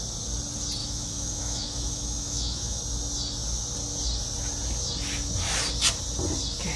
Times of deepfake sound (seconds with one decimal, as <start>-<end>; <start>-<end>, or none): 0.8-2.8